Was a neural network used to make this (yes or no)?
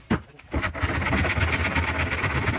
no